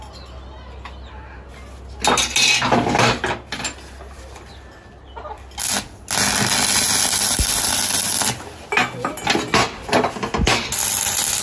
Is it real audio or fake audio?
real